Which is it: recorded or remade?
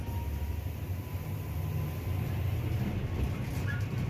recorded